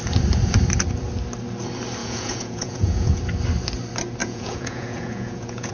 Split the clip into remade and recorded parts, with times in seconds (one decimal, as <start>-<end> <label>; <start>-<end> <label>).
0.0-2.0 recorded; 2.0-3.2 remade; 3.2-4.2 recorded; 4.2-5.7 remade